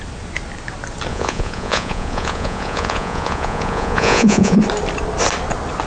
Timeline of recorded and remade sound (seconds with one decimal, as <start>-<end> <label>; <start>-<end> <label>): 0.0-1.1 recorded; 1.1-4.6 remade; 4.6-5.9 recorded